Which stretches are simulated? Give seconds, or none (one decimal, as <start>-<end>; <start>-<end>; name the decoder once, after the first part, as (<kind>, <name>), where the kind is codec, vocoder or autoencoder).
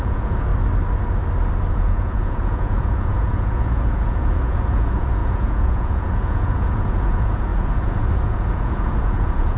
0.0-0.5 (vocoder, Vocos); 1.7-9.6